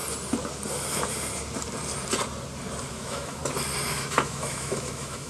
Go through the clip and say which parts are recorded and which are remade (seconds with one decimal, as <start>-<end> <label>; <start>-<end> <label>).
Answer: 0.0-2.9 recorded; 2.9-3.4 remade; 3.4-3.9 recorded; 3.9-5.3 remade